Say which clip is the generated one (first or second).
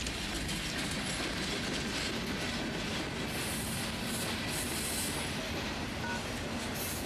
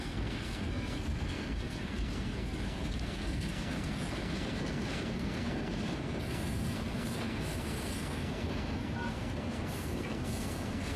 second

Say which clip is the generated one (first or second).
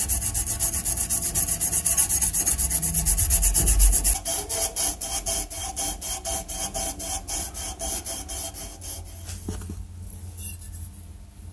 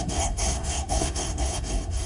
second